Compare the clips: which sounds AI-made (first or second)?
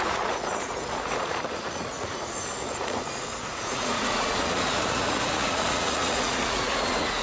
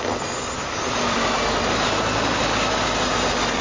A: first